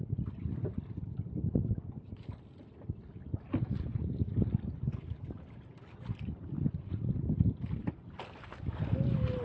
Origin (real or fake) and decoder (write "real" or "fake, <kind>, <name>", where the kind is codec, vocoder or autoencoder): real